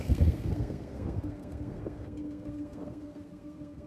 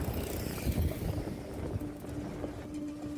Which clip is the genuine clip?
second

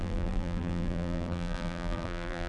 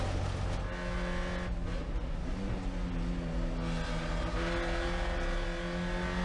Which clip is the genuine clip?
second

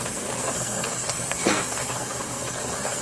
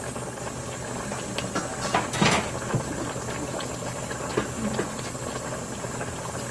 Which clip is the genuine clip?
second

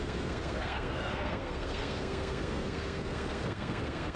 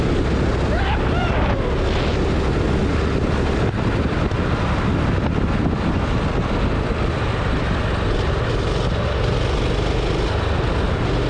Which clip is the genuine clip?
second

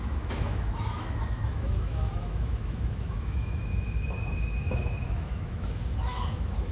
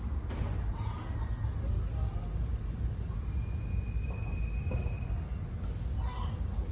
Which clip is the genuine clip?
second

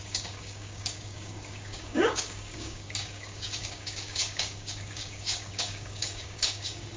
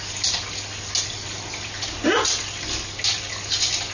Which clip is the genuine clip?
second